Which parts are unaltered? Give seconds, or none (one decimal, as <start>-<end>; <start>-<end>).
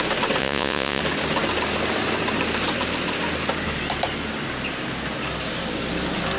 0.0-0.4; 1.0-6.4